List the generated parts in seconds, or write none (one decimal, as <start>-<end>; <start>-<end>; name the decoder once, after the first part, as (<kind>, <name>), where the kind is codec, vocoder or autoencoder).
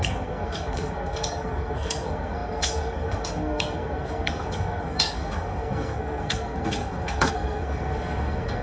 0.0-8.6 (codec, SNAC)